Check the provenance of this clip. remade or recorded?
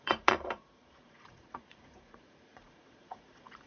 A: remade